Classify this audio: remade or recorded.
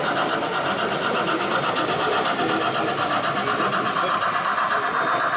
recorded